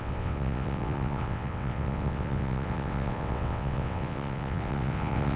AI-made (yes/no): yes